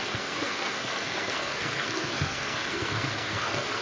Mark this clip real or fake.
fake